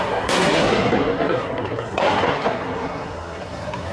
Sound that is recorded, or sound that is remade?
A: remade